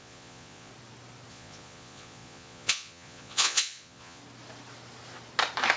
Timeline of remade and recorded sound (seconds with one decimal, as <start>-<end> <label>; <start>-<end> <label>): 0.0-0.7 remade; 0.7-1.3 recorded; 1.3-4.2 remade; 4.2-5.8 recorded